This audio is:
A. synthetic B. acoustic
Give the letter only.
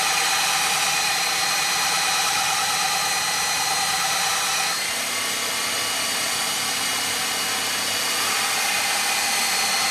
B